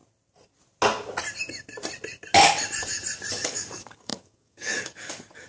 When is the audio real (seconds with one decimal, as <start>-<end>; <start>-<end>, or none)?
0.0-3.3